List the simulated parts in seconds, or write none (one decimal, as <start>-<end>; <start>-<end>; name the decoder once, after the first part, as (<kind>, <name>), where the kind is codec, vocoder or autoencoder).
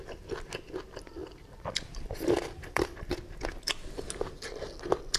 1.2-3.6 (vocoder, BigVGAN v2)